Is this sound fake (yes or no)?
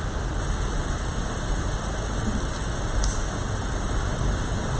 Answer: no